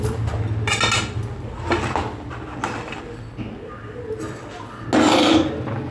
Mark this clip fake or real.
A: real